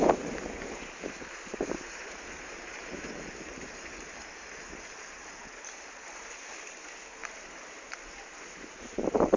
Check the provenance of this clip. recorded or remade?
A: remade